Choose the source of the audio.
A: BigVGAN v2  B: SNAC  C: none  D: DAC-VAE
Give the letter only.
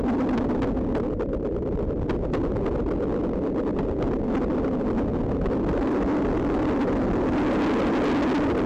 C